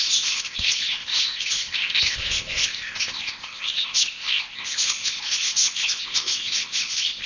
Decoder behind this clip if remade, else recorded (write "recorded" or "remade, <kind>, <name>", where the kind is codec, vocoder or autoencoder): remade, codec, ZipCodec